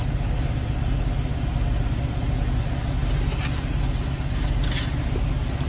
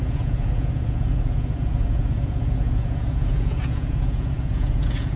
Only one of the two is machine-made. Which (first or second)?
second